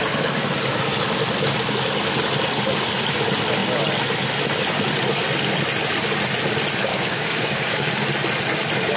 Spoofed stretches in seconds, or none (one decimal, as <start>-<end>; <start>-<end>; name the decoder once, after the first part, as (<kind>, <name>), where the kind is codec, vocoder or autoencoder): 6.9-7.9 (codec, DAC)